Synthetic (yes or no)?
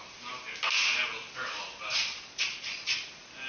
no